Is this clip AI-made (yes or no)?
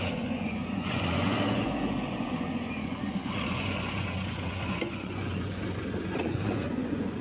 yes